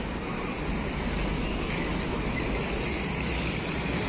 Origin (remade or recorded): recorded